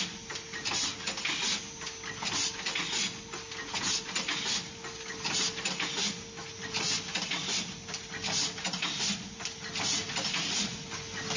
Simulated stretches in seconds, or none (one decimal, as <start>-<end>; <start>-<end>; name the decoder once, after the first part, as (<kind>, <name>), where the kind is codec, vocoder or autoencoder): none

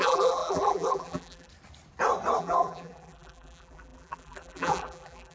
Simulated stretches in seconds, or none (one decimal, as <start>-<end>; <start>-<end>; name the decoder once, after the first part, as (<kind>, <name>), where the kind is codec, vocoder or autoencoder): 0.0-1.5 (vocoder, BigVGAN v2); 2.4-5.3

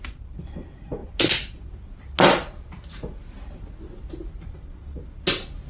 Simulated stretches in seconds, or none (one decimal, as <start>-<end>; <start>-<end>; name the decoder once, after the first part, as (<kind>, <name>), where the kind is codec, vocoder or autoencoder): none

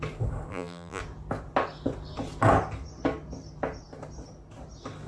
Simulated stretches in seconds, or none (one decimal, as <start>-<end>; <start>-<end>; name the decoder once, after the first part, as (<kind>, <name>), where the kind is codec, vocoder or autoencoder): 0.5-1.0 (vocoder, BigVGAN v2)

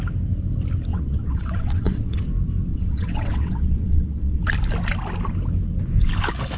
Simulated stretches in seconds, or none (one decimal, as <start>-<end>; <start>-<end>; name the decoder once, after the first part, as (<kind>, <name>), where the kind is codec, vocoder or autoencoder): 0.9-2.3 (vocoder, WaveNeXt); 2.7-4.4

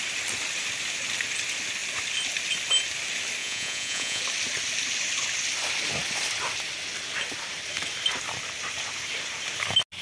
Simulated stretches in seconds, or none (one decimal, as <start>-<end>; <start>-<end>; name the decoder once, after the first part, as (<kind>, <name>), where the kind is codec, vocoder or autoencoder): 3.4-4.2 (vocoder, Vocos)